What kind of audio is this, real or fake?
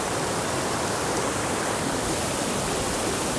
fake